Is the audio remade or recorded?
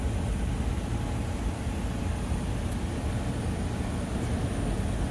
recorded